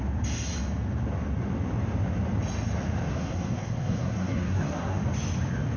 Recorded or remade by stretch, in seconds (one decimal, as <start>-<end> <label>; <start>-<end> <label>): 0.0-3.1 recorded; 3.1-5.0 remade; 5.0-5.8 recorded